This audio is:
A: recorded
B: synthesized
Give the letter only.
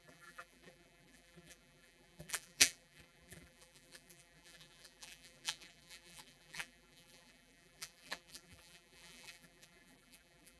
B